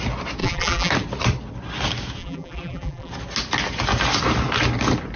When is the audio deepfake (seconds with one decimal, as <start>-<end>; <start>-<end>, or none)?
0.4-0.9; 2.2-3.1